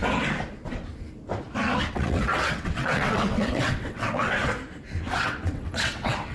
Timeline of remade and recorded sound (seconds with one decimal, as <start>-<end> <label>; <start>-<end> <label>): 0.0-1.9 recorded; 1.9-4.4 remade; 4.4-5.2 recorded; 5.2-6.3 remade